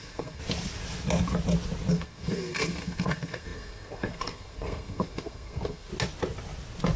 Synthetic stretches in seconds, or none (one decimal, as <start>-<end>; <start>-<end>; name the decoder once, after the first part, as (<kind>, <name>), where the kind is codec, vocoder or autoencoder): 0.0-0.4 (codec, SNAC); 1.9-5.9